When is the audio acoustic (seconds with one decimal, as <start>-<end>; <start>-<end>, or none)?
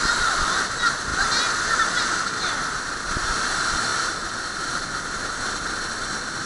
0.0-6.5